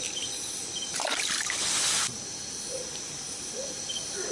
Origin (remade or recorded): recorded